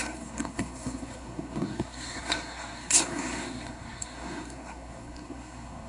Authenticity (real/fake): fake